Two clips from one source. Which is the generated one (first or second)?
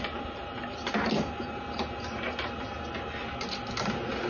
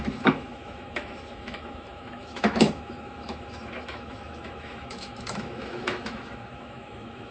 second